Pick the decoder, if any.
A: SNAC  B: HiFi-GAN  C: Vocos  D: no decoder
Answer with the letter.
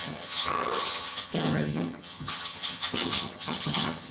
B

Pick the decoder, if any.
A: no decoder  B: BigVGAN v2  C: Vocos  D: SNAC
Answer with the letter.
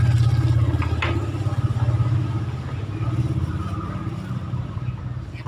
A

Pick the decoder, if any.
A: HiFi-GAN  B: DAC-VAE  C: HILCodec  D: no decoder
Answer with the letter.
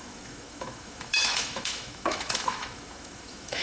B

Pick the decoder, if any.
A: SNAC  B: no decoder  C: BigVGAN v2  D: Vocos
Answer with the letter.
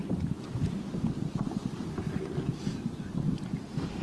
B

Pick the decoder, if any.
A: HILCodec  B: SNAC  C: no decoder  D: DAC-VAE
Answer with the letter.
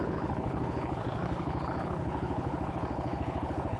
A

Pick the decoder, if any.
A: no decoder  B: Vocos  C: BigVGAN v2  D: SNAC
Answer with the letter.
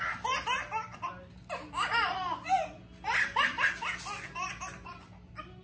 A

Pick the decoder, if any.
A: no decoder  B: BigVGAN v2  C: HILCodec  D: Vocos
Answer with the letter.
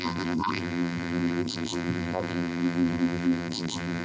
B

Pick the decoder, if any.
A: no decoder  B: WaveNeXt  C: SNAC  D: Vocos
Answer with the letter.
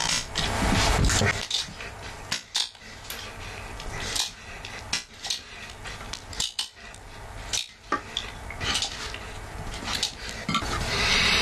A